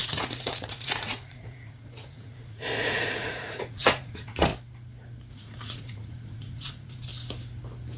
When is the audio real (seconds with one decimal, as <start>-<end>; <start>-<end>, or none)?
4.5-5.3; 7.1-8.0